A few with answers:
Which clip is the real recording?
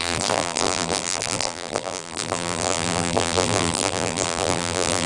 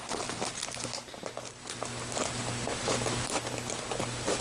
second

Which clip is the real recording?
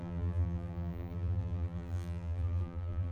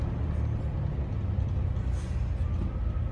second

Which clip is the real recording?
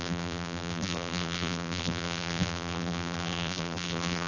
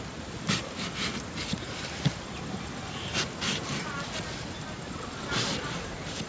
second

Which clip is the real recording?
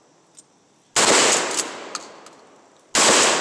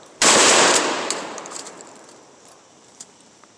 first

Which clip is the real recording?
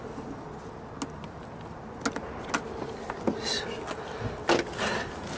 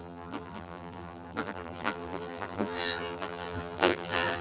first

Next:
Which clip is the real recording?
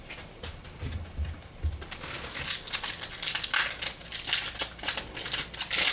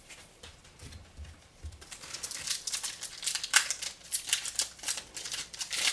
first